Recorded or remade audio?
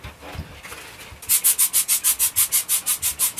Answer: recorded